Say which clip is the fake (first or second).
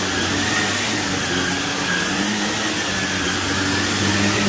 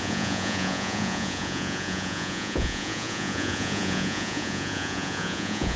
second